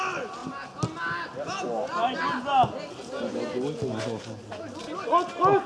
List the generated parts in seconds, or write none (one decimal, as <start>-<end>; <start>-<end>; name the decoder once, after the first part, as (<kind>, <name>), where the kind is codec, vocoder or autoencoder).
none